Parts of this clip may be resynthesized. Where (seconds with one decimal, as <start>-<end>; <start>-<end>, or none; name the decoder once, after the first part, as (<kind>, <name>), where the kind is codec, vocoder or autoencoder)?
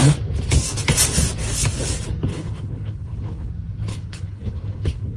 2.3-3.5 (codec, HILCodec); 3.9-5.2